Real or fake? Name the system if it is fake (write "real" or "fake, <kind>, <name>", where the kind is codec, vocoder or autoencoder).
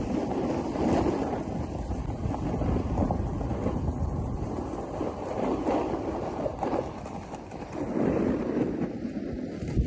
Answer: real